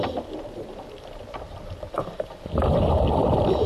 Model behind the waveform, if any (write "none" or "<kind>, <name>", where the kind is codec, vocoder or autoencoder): vocoder, BigVGAN v2